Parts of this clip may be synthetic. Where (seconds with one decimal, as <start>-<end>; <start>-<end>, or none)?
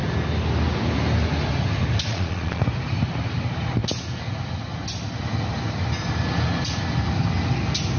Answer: 2.1-2.6